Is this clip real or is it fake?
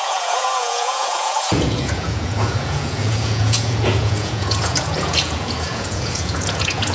fake